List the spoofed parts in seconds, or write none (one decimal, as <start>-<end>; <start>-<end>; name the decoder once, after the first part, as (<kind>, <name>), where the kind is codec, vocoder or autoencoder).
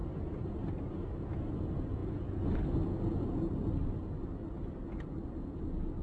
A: 0.0-0.8 (vocoder, BigVGAN v2)